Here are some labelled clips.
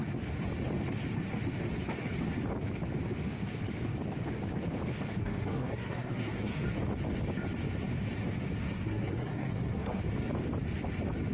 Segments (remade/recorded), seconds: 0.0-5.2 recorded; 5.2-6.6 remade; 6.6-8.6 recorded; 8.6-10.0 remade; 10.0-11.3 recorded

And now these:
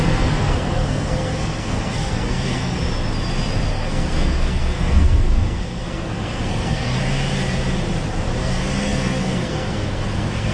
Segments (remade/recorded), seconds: 0.0-2.8 remade; 2.8-3.7 recorded; 3.7-7.0 remade; 7.0-8.4 recorded; 8.4-10.5 remade

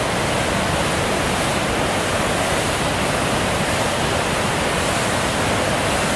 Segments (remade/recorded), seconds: 0.0-6.2 recorded

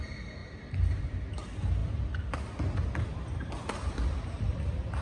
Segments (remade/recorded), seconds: 0.0-5.0 recorded